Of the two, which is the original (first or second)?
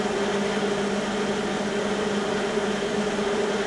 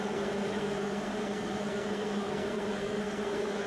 first